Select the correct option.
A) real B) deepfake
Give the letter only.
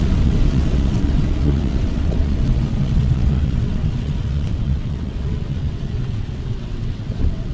B